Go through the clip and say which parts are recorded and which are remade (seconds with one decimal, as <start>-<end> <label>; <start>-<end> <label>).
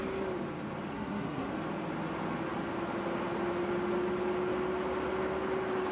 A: 0.0-0.9 recorded; 0.9-1.5 remade; 1.5-5.9 recorded